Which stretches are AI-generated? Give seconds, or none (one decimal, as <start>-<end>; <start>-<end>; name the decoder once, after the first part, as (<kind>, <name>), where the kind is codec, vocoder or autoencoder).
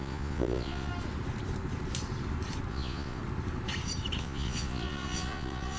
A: 0.0-0.9 (vocoder, Vocos); 2.7-3.2; 4.2-5.8